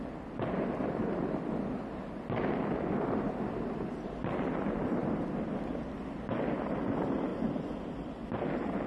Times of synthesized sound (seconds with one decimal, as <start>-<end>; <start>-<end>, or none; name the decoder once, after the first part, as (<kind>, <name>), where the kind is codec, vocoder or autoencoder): none